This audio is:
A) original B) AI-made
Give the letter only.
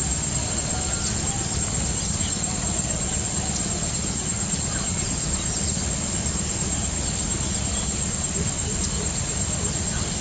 A